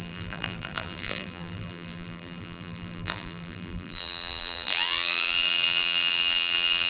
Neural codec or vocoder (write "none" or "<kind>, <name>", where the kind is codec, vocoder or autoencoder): vocoder, BigVGAN v2